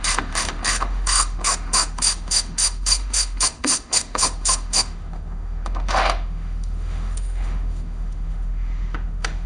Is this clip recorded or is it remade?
remade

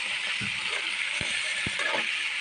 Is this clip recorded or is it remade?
recorded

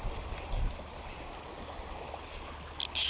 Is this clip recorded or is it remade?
recorded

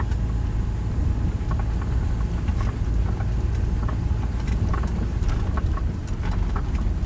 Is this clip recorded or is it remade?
recorded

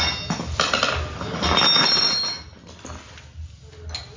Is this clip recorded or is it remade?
recorded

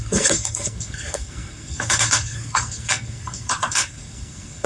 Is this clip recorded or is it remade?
remade